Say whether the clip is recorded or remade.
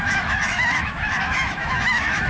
remade